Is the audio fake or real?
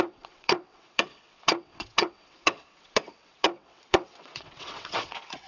fake